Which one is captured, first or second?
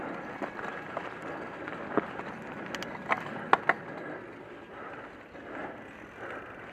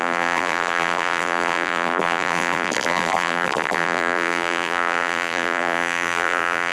first